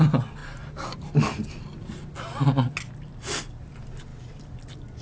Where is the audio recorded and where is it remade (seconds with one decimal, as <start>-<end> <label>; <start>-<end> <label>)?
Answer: 0.0-5.0 recorded